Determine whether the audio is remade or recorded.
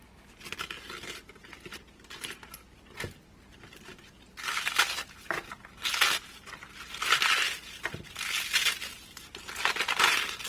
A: recorded